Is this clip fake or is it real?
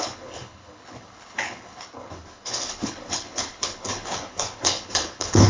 fake